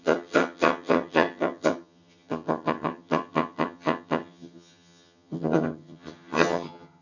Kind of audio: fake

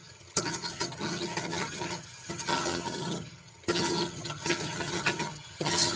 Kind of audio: fake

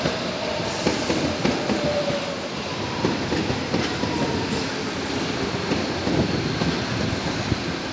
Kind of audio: real